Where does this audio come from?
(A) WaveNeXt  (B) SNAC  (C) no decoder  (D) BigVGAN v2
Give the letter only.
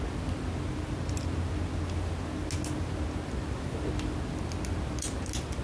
C